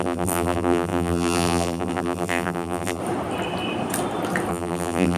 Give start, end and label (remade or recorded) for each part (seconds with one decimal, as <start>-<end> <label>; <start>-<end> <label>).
0.0-3.0 remade; 3.0-4.5 recorded; 4.5-5.2 remade